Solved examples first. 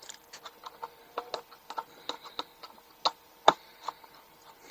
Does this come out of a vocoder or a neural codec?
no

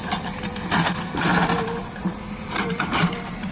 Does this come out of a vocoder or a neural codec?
yes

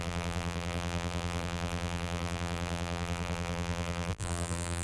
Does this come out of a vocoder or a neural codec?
yes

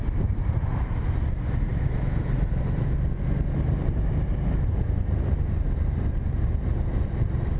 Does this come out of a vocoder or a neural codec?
yes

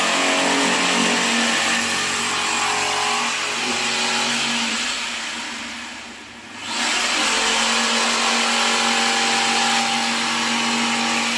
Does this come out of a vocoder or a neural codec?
no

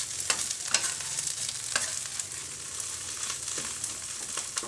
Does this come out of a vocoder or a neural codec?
no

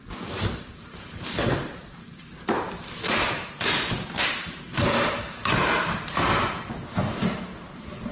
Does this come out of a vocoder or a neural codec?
yes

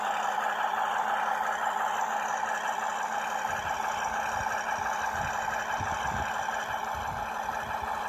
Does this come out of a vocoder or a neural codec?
no